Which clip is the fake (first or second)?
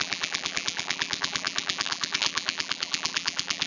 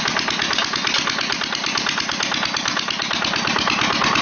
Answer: first